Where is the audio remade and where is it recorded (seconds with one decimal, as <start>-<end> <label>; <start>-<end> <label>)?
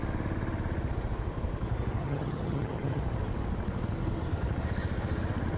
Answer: 0.0-2.0 recorded; 2.0-3.0 remade; 3.0-5.6 recorded